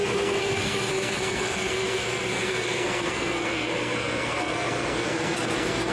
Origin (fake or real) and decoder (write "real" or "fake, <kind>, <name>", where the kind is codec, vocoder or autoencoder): fake, codec, SNAC